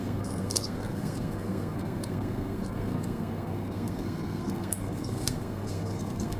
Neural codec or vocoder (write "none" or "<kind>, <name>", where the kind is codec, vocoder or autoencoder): codec, SNAC